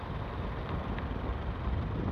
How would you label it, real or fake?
real